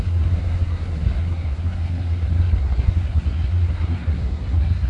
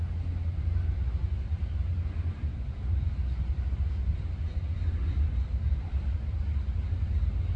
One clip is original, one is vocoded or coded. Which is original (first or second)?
second